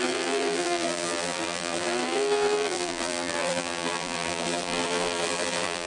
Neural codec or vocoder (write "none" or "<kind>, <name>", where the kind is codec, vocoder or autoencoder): vocoder, BigVGAN v2